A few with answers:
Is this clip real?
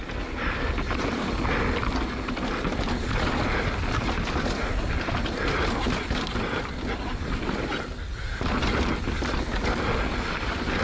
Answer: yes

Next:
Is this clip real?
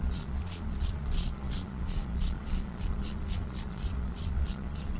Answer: no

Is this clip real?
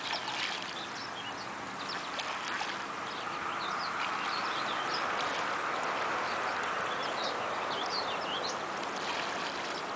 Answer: yes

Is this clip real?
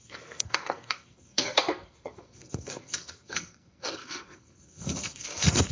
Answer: no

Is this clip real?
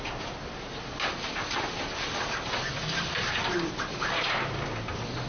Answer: yes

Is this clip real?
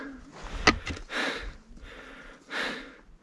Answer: yes